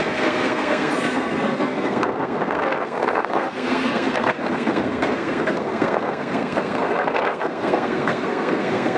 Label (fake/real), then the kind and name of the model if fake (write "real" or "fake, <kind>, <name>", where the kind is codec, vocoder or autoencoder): fake, codec, SNAC